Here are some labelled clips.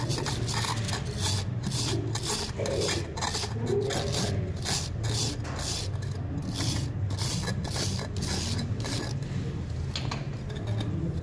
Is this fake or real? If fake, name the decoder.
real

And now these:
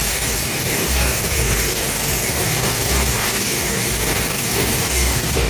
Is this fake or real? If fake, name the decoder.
fake, codec, DAC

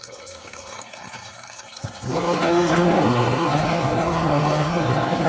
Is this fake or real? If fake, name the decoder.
fake, codec, SNAC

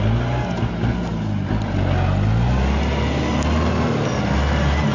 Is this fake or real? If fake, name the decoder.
real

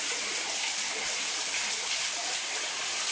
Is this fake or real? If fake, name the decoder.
real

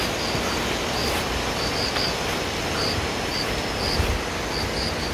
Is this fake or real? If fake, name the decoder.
real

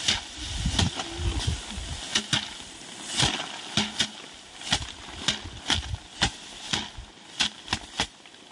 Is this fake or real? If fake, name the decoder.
real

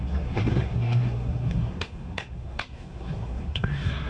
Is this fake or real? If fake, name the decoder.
fake, codec, SNAC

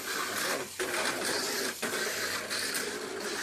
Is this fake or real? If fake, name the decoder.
real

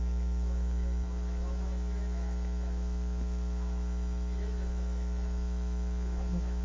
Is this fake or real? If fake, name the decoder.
fake, autoencoder, DAC-VAE